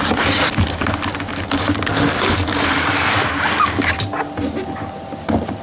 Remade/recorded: recorded